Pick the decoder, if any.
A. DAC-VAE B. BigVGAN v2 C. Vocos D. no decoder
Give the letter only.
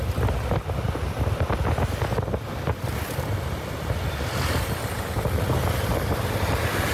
D